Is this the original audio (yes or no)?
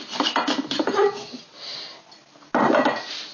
yes